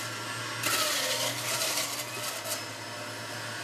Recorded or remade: recorded